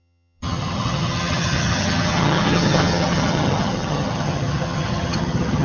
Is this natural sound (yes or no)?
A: no